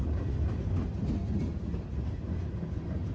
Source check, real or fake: real